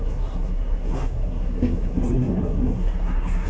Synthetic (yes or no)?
yes